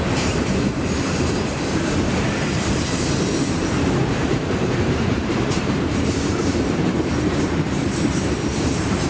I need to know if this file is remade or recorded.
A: remade